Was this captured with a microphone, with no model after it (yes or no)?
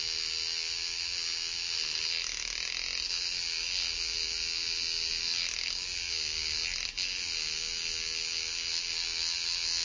yes